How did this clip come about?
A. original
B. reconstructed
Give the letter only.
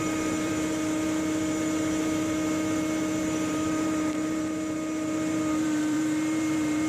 B